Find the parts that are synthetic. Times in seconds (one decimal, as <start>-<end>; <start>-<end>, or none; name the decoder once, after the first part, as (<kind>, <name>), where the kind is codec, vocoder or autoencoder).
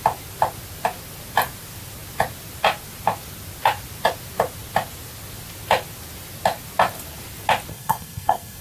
7.7-8.6 (codec, SNAC)